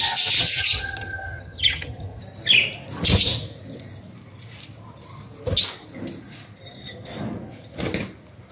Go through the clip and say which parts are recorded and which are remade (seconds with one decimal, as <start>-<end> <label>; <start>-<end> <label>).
0.0-0.4 recorded; 0.4-2.2 remade; 2.2-8.5 recorded